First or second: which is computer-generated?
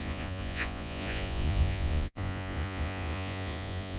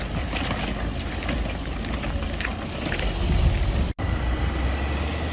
first